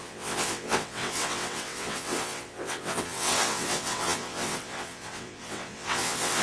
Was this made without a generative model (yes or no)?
no